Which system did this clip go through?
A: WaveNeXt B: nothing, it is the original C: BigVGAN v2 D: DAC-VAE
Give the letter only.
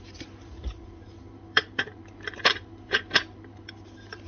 C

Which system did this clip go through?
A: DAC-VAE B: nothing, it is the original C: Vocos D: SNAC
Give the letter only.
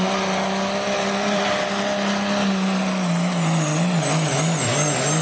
B